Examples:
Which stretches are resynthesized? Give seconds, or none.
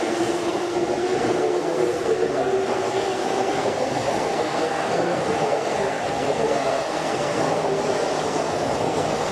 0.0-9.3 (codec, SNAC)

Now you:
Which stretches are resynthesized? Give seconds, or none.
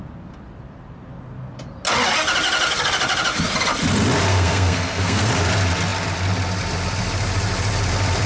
4.3-5.3 (codec, SNAC)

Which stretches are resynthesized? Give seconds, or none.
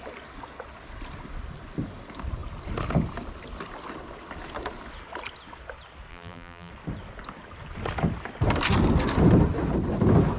6.1-6.7 (vocoder, BigVGAN v2)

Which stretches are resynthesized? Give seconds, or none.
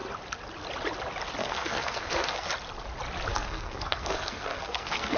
1.4-2.5 (codec, SNAC); 3.3-5.2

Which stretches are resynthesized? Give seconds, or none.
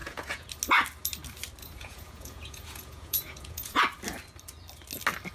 0.0-0.5 (vocoder, Vocos); 1.6-3.8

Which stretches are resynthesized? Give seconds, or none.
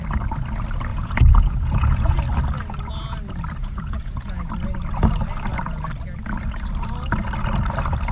0.9-2.2 (vocoder, Vocos); 3.6-4.5